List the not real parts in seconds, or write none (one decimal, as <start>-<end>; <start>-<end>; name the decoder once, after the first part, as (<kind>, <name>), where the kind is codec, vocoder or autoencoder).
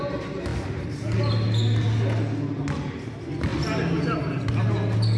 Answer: none